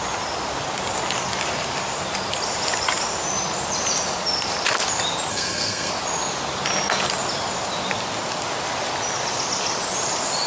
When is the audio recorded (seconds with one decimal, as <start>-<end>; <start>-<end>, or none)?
0.0-5.3; 5.9-10.5